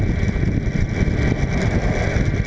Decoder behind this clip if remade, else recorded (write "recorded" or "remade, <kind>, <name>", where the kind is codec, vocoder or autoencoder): recorded